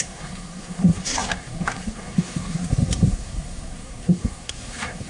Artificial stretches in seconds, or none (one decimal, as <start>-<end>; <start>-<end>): 0.0-5.1